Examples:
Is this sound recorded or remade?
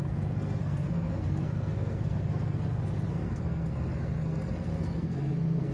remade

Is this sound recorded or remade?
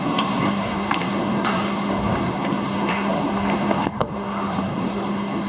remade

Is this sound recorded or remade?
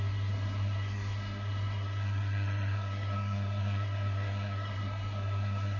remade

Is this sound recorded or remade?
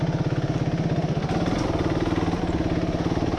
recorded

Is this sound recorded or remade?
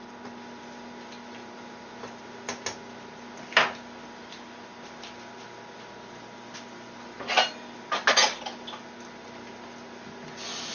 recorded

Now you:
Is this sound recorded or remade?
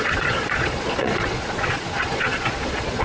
remade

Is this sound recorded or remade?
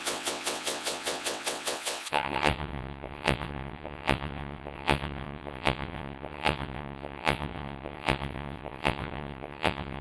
remade